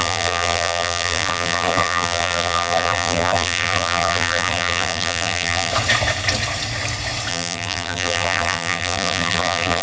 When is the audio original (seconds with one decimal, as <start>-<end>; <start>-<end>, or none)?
5.7-7.3